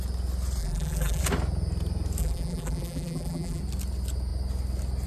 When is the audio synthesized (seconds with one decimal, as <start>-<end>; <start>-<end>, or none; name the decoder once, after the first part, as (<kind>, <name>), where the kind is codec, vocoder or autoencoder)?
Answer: 0.6-1.2 (vocoder, BigVGAN v2); 2.2-3.6